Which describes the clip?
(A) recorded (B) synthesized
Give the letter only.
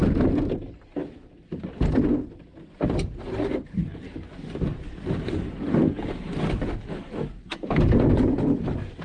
A